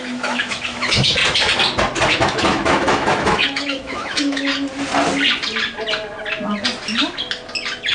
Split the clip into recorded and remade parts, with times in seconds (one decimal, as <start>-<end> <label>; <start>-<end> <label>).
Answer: 0.0-1.2 remade; 1.2-2.1 recorded; 2.1-4.5 remade; 4.5-7.9 recorded